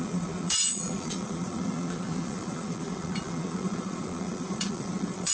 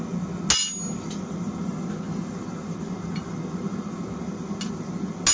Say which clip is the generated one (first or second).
first